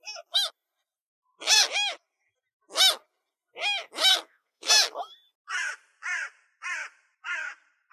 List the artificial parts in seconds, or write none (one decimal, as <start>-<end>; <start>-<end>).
4.1-4.7